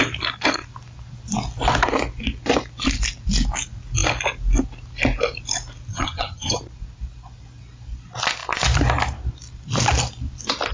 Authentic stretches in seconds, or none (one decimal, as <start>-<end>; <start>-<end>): 0.0-5.9; 6.6-10.7